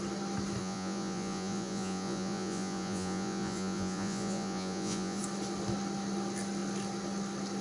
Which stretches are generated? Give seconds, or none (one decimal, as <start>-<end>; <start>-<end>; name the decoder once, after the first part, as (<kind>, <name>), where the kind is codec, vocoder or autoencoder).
0.6-5.2 (vocoder, Vocos)